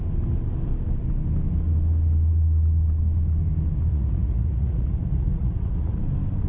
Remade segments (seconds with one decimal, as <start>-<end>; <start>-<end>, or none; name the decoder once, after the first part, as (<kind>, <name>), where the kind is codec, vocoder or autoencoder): 3.9-6.0 (vocoder, Vocos)